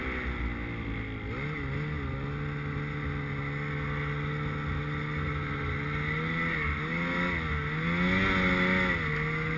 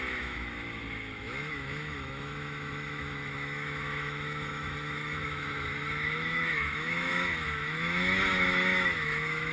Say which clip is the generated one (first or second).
second